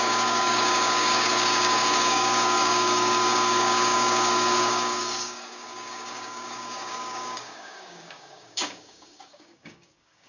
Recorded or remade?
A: remade